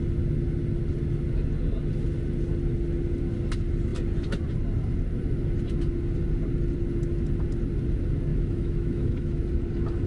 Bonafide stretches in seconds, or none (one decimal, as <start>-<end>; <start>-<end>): 0.0-8.3; 9.4-10.1